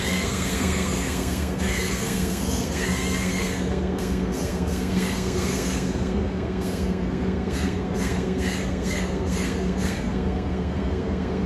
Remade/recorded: remade